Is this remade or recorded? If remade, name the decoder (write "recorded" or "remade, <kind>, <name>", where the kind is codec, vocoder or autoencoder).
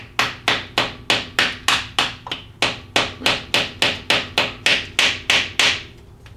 recorded